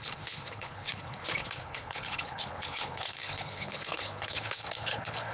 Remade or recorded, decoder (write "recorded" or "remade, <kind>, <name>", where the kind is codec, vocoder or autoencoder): remade, codec, HILCodec